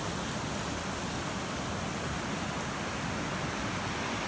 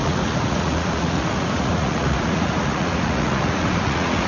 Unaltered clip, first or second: first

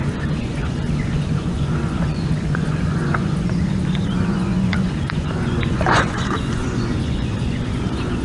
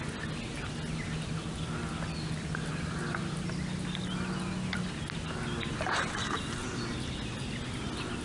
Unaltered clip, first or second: second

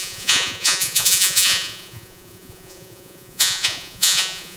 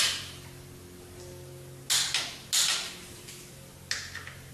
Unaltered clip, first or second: second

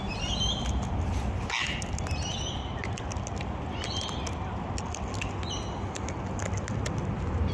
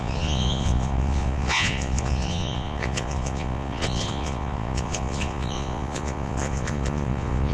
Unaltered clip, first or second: first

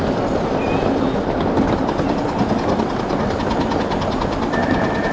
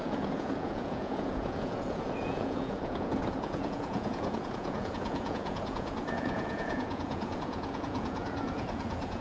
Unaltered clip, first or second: first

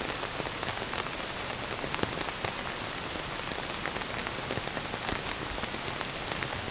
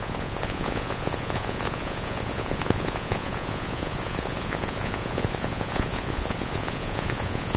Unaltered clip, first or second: first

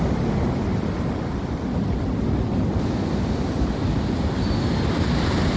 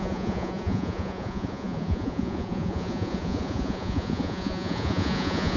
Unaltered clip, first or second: first